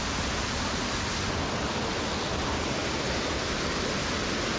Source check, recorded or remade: recorded